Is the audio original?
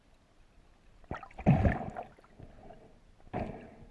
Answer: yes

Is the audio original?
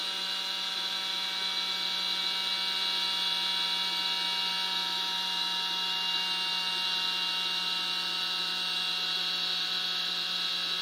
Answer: yes